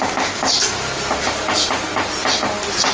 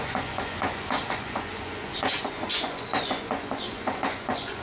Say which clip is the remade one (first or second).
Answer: second